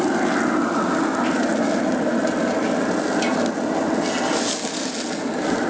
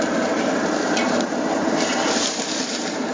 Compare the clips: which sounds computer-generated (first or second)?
second